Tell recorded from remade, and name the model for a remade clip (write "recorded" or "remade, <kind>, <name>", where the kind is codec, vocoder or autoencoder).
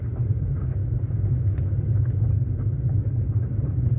recorded